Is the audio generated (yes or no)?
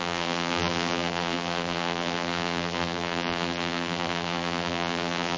yes